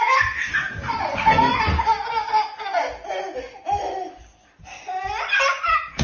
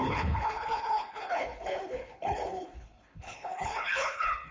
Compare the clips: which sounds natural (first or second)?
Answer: first